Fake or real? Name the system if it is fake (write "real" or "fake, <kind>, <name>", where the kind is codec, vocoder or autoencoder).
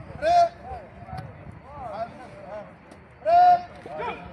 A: real